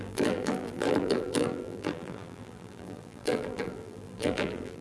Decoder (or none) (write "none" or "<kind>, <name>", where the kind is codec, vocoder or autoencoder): vocoder, BigVGAN v2